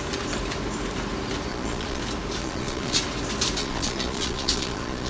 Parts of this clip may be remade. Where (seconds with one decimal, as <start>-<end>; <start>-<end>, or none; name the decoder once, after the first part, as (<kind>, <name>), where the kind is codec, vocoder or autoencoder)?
1.5-2.0 (vocoder, Vocos); 2.4-3.0; 3.6-5.1